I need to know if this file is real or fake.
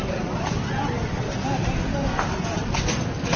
real